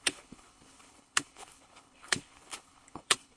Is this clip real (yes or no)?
no